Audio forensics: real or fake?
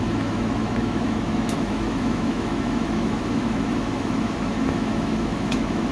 fake